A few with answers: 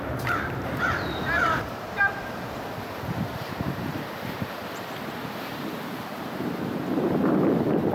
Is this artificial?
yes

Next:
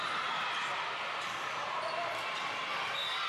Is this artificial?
no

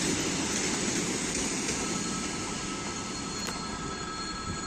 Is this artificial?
yes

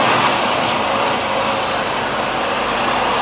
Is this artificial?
no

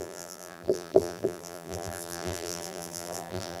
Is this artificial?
yes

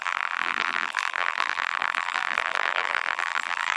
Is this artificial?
yes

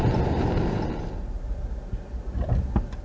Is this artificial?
no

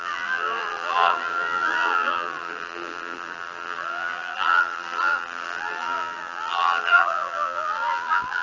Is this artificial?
yes